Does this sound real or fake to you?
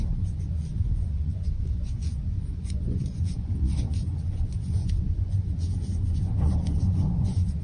fake